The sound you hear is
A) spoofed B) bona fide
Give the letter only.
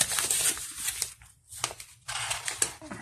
A